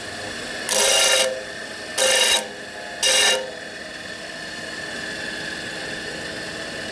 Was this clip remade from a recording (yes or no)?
no